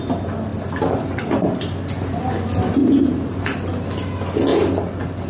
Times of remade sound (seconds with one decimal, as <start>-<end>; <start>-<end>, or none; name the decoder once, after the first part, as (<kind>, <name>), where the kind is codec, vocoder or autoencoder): 2.8-3.4 (vocoder, BigVGAN v2)